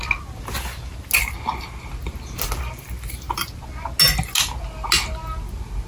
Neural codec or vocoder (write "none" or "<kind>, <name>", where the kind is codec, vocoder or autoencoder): none